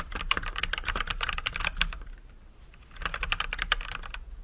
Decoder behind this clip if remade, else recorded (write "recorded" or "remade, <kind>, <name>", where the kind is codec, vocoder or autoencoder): recorded